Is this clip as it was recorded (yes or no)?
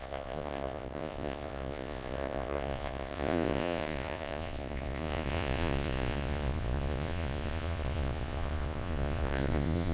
no